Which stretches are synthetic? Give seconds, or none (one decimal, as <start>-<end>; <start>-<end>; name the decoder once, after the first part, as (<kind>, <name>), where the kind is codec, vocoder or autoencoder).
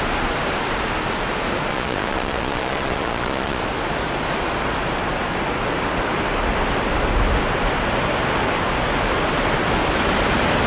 1.7-3.6 (vocoder, Vocos)